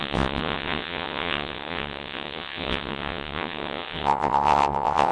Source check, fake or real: fake